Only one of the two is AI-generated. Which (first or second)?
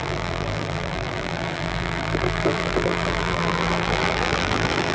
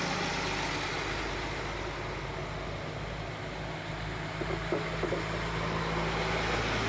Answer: first